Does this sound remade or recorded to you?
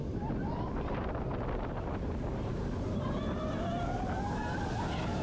recorded